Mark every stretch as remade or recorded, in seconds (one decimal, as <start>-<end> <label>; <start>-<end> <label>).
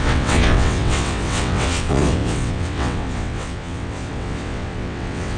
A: 0.0-5.4 remade